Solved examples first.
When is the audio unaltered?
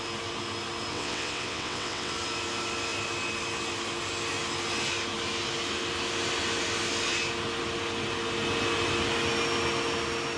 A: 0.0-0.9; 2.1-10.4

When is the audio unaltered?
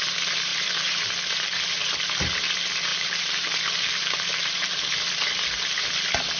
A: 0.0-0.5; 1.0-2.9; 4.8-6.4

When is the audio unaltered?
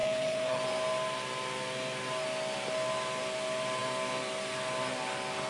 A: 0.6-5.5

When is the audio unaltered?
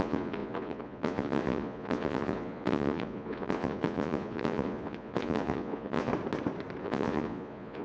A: 6.1-6.8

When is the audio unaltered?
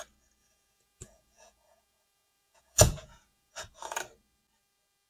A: 0.0-0.4; 3.5-5.1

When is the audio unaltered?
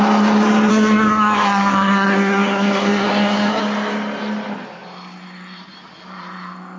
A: 0.0-0.7; 3.6-6.8